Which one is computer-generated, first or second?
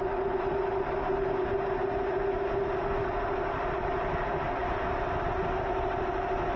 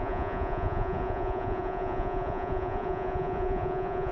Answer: second